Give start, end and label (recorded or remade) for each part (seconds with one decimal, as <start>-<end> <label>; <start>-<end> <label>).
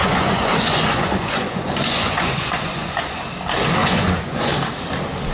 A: 0.0-3.2 remade; 3.2-3.8 recorded; 3.8-4.5 remade; 4.5-5.3 recorded